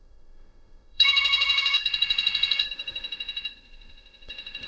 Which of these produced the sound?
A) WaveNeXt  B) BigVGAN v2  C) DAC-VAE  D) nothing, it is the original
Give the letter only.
C